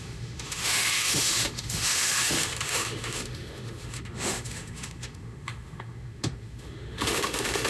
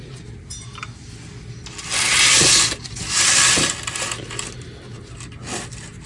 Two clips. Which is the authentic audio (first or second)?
second